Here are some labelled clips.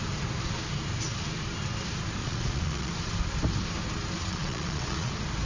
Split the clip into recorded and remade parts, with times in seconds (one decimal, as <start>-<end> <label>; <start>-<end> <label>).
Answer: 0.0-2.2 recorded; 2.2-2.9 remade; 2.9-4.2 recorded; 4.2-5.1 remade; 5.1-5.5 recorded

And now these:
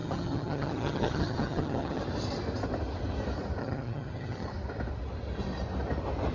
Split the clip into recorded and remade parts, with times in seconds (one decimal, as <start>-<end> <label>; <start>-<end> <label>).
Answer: 0.0-2.0 remade; 2.0-3.6 recorded; 3.6-4.5 remade; 4.5-6.3 recorded

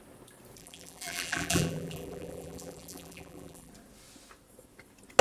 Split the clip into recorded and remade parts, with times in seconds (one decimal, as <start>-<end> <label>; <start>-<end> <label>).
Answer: 0.0-0.6 recorded; 0.6-3.7 remade; 3.7-5.2 recorded